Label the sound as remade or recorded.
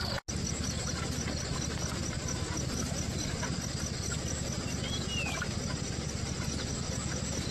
recorded